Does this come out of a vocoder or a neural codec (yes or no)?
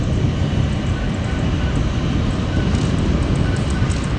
no